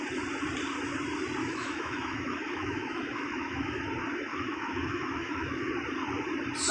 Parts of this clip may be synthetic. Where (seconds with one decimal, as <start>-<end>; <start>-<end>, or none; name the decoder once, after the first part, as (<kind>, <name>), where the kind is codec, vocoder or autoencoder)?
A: 1.4-3.8 (autoencoder, DAC-VAE); 4.3-5.7